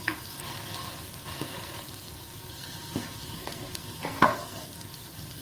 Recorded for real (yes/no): no